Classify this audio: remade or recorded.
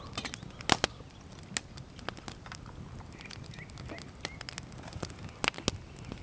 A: recorded